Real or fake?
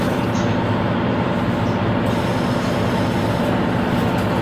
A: real